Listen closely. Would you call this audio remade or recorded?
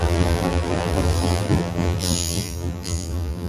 remade